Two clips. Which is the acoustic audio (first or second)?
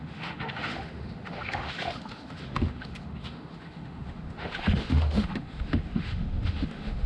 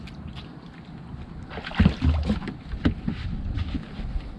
second